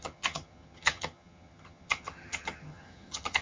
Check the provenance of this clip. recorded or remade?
remade